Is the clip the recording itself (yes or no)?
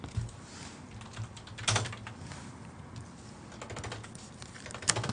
yes